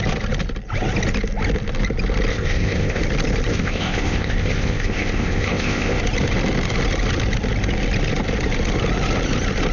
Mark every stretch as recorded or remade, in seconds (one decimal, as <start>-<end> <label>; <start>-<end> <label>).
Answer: 0.0-2.3 recorded; 2.3-3.0 remade; 3.0-3.5 recorded; 3.5-6.0 remade; 6.0-9.7 recorded